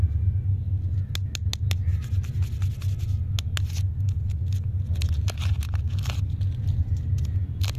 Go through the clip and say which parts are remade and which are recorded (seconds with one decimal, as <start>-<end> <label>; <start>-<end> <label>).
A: 0.0-7.8 recorded